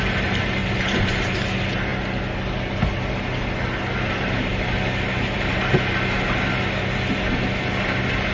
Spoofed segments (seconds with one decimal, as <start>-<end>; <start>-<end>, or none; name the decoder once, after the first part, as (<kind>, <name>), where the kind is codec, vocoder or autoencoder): 0.6-1.4 (vocoder, BigVGAN v2); 4.4-5.6